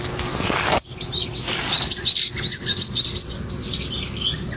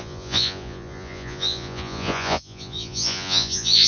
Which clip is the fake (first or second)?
second